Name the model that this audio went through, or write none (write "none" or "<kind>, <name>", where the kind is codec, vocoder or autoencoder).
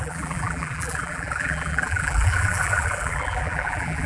vocoder, BigVGAN v2